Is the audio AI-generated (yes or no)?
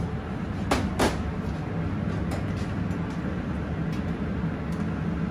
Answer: no